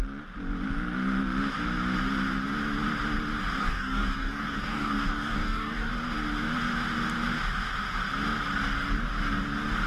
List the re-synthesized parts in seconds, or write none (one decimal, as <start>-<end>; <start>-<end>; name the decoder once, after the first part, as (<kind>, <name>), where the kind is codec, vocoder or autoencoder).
3.6-5.9 (codec, DAC)